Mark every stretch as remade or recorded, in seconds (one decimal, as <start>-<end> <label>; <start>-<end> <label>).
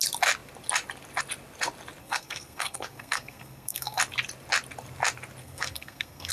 0.0-2.0 recorded; 2.0-4.0 remade; 4.0-5.4 recorded; 5.4-6.3 remade